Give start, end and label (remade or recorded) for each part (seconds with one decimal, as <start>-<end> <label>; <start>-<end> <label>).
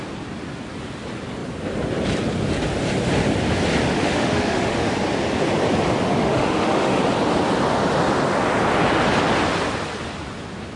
0.0-3.9 recorded; 3.9-4.9 remade; 4.9-6.1 recorded; 6.1-7.0 remade; 7.0-10.8 recorded